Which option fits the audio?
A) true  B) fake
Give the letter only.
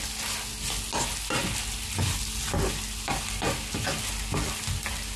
A